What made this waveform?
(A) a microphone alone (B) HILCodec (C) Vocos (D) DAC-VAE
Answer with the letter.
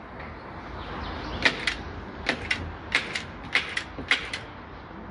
A